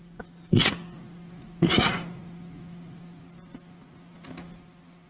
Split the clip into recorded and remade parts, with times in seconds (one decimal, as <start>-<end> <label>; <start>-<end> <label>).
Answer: 0.0-5.1 recorded